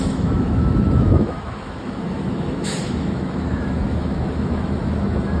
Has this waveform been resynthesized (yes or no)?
yes